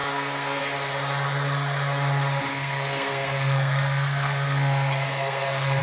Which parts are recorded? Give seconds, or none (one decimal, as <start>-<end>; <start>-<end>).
0.6-2.5